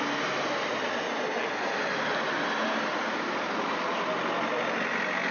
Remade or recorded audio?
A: recorded